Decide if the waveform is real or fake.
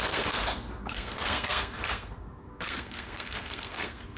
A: fake